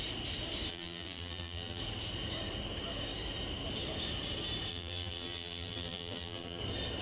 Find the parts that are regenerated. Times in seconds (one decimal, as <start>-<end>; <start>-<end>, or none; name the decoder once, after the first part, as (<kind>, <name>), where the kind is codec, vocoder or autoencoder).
0.7-1.8 (vocoder, BigVGAN v2); 4.7-6.6